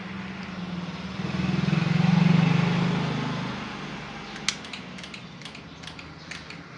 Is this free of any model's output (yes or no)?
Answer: yes